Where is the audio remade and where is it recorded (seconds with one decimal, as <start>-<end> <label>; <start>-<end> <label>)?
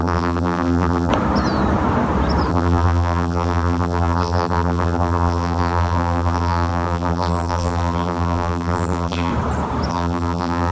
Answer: 0.0-1.1 remade; 1.1-2.5 recorded; 2.5-9.3 remade; 9.3-9.9 recorded; 9.9-10.7 remade